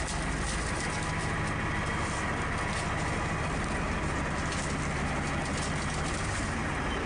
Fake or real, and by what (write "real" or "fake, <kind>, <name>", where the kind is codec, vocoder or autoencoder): real